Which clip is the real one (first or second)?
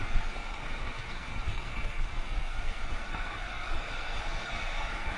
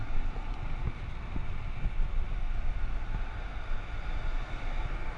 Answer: second